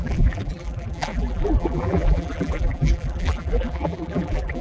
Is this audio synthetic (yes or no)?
yes